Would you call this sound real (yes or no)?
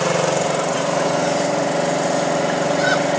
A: no